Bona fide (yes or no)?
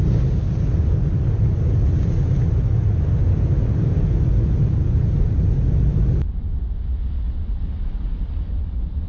yes